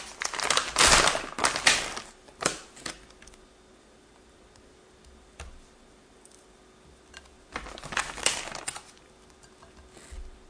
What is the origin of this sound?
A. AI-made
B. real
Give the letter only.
B